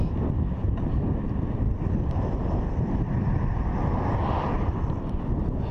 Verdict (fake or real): real